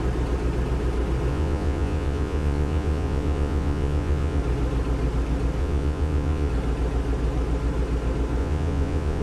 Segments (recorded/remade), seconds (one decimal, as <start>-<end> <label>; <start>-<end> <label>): 0.0-1.3 recorded; 1.3-4.4 remade; 4.4-5.6 recorded; 5.6-6.5 remade; 6.5-8.4 recorded; 8.4-9.2 remade